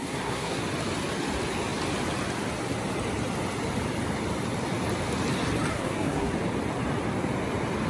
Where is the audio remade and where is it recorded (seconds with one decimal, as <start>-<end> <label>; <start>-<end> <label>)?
0.0-0.6 remade; 0.6-5.7 recorded; 5.7-6.3 remade; 6.3-7.9 recorded